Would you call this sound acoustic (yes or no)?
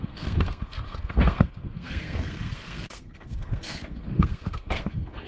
no